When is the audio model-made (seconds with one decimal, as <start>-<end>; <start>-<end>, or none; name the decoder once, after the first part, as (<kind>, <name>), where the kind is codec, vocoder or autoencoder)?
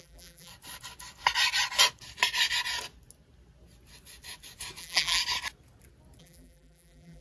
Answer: 0.0-0.5 (vocoder, BigVGAN v2); 4.8-5.2; 6.2-7.2